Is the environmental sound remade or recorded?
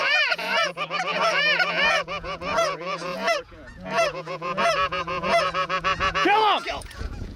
remade